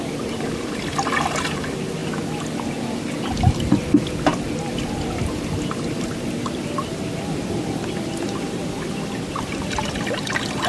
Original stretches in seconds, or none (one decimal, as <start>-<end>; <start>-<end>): 0.0-10.7